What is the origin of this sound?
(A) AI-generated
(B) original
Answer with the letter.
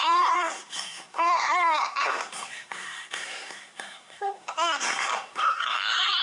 A